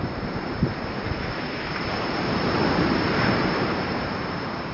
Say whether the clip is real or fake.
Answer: fake